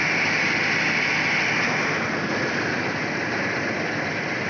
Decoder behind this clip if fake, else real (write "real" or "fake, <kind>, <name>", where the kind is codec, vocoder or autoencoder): real